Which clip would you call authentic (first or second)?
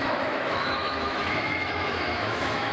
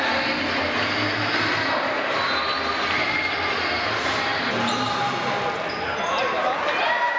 second